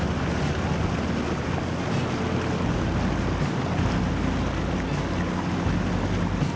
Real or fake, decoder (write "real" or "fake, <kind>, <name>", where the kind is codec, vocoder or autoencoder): real